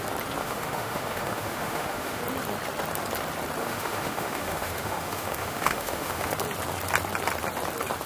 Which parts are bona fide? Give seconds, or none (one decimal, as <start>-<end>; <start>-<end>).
0.0-0.4; 2.2-3.6; 6.3-8.1